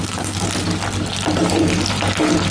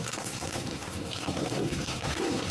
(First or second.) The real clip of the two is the first